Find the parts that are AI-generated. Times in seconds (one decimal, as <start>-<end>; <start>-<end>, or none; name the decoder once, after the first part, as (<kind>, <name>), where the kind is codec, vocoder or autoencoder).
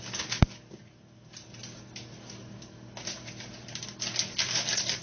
none